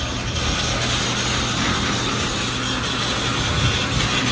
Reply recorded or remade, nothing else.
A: recorded